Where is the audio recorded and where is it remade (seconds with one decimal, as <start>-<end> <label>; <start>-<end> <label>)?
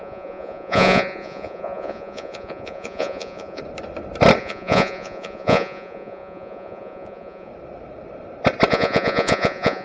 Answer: 0.0-3.6 remade; 3.6-4.4 recorded; 4.4-7.5 remade; 7.5-8.7 recorded; 8.7-9.8 remade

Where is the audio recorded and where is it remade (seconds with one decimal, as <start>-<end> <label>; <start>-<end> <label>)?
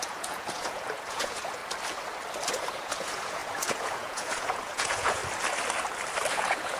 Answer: 0.0-1.6 remade; 1.6-2.5 recorded; 2.5-5.2 remade; 5.2-6.3 recorded; 6.3-6.8 remade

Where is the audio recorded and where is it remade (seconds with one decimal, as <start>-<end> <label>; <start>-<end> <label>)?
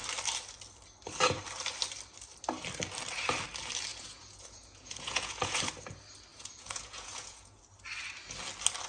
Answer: 0.0-3.9 recorded; 3.9-5.6 remade; 5.6-6.3 recorded; 6.3-7.6 remade; 7.6-8.9 recorded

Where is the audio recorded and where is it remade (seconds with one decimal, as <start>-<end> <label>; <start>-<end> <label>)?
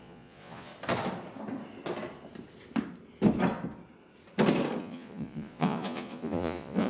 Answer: 0.0-0.7 remade; 0.7-4.8 recorded; 4.8-6.9 remade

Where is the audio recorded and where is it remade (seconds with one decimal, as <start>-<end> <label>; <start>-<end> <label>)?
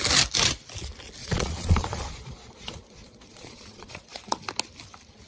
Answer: 0.0-1.2 recorded; 1.2-4.4 remade; 4.4-5.3 recorded